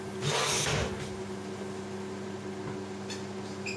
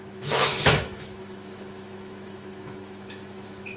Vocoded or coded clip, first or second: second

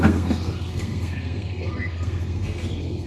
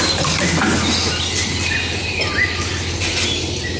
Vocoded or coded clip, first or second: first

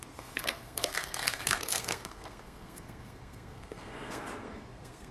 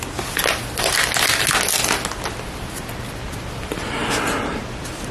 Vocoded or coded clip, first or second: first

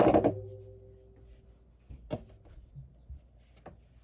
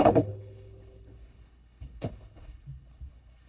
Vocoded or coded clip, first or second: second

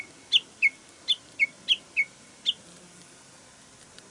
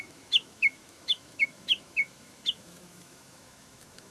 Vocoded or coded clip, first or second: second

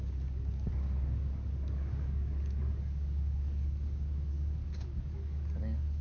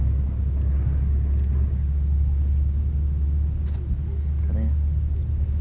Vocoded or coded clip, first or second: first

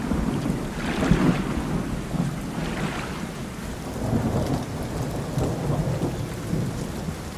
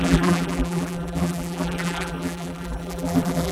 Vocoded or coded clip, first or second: second